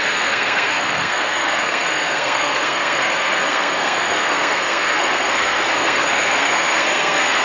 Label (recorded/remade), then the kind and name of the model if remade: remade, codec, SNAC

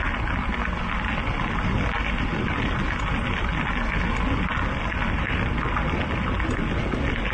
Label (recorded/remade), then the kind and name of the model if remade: recorded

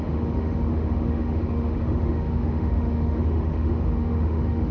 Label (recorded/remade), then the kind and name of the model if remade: remade, autoencoder, DAC-VAE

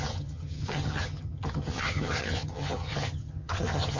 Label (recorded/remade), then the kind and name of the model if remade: remade, vocoder, HiFi-GAN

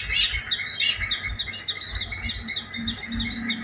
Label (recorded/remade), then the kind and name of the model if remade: recorded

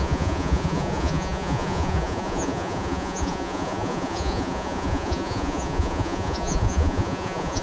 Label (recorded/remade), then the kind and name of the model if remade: remade, vocoder, Vocos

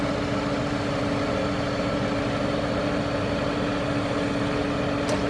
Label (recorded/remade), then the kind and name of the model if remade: recorded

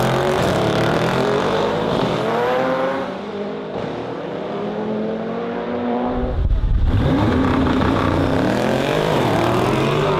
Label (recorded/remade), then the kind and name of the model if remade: remade, vocoder, BigVGAN v2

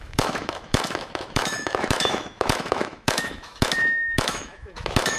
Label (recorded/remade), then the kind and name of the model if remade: remade, autoencoder, DAC-VAE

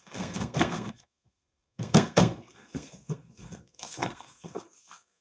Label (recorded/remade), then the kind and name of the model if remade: remade, codec, SNAC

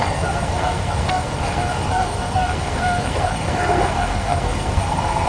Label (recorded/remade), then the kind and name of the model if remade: remade, codec, SNAC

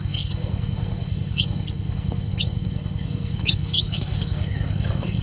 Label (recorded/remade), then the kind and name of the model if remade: remade, codec, SNAC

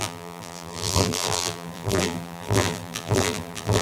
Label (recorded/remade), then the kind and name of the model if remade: remade, vocoder, BigVGAN v2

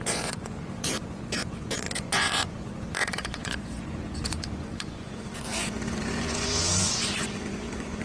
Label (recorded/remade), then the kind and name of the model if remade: remade, vocoder, Vocos